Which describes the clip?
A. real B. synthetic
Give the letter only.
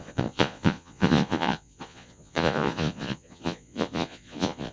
B